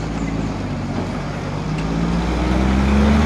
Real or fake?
real